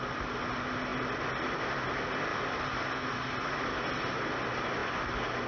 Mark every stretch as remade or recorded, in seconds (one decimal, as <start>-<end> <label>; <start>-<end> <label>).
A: 0.0-5.5 recorded